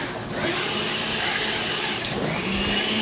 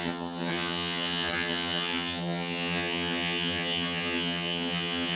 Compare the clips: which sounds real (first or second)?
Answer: first